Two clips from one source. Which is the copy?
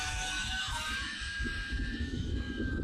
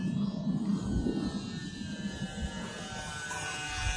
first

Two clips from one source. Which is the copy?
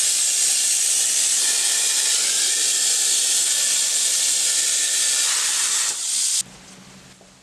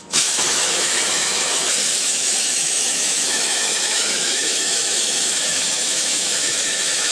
second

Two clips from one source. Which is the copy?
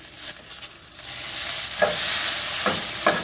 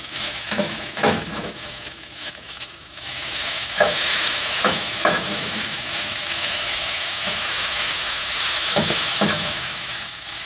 second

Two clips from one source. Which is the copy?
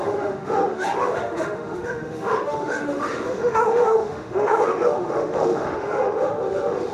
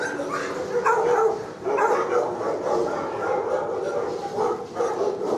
first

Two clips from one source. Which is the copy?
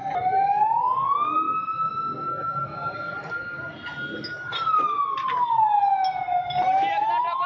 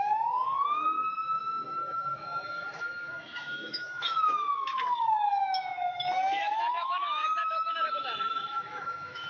second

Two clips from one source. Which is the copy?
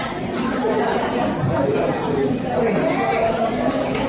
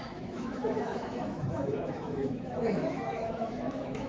second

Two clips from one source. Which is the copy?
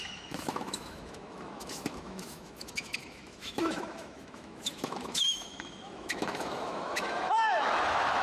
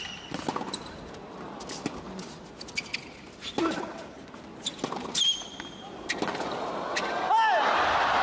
first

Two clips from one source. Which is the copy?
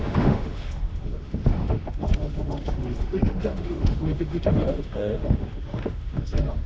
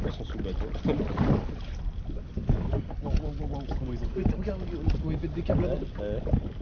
first